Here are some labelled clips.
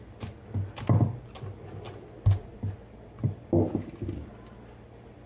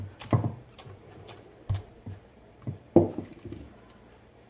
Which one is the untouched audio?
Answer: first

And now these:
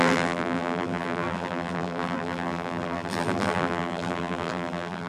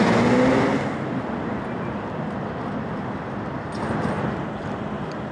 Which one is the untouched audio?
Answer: second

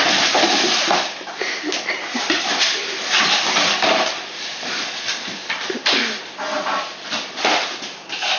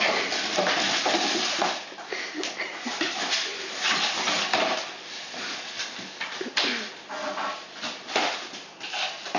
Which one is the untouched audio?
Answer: second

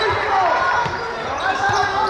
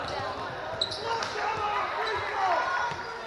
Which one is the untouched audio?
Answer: second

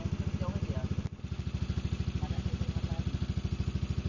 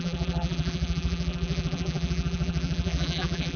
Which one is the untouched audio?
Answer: first